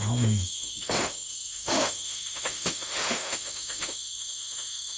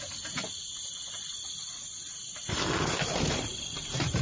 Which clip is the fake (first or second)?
first